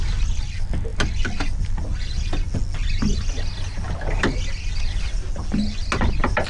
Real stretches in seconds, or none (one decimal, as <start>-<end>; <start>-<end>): 0.0-6.5